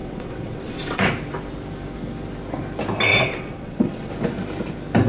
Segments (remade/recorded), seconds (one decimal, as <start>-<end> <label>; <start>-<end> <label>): 0.0-1.1 remade; 1.1-3.1 recorded; 3.1-4.1 remade; 4.1-5.1 recorded